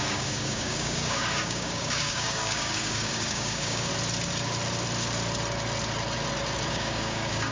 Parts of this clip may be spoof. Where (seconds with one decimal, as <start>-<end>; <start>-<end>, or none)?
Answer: 0.0-3.9; 6.7-7.5